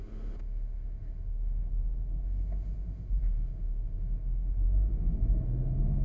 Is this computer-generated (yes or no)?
yes